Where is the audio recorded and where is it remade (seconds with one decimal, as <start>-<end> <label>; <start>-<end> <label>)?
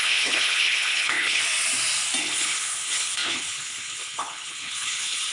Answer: 0.0-1.4 remade; 1.4-2.2 recorded; 2.2-5.3 remade